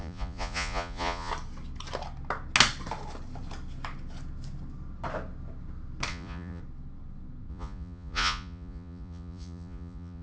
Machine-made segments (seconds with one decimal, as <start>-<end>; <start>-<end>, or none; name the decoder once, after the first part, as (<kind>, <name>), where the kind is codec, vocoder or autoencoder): 0.0-1.3 (vocoder, Vocos); 6.1-6.6; 7.5-10.2